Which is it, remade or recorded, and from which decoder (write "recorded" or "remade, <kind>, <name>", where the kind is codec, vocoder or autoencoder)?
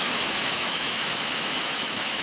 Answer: remade, autoencoder, DAC-VAE